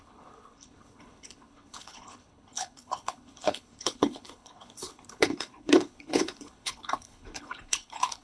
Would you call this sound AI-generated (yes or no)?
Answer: yes